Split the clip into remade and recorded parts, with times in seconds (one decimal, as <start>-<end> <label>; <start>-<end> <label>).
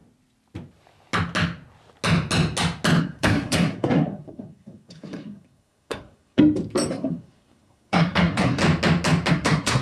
0.0-3.0 recorded; 3.0-6.4 remade; 6.4-6.9 recorded; 6.9-8.6 remade; 8.6-9.3 recorded; 9.3-9.8 remade